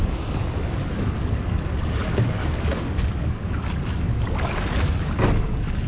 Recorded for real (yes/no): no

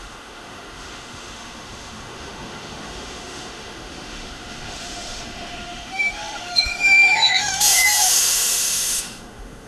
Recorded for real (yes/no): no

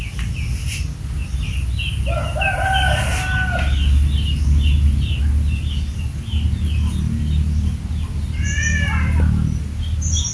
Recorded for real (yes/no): yes